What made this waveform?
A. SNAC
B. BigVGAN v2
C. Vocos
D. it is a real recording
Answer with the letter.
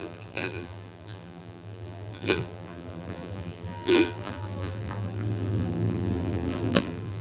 B